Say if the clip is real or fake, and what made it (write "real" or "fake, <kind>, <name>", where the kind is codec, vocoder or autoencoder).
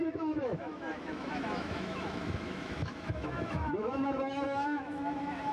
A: fake, autoencoder, DAC-VAE